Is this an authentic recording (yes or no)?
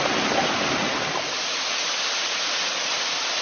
yes